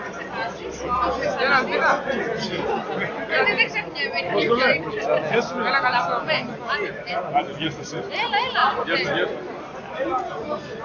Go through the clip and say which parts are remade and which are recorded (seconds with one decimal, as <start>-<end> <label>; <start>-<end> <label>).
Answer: 0.0-8.6 recorded; 8.6-9.4 remade; 9.4-10.8 recorded